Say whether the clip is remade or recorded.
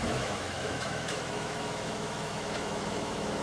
remade